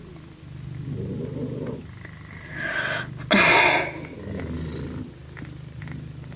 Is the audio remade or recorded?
recorded